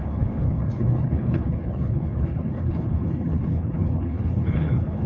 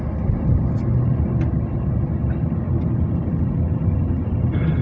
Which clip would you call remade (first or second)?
first